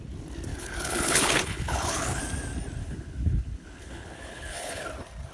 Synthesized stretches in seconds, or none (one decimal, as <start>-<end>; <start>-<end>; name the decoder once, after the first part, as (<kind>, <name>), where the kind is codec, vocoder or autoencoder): 0.5-2.2 (codec, HILCodec); 2.8-4.8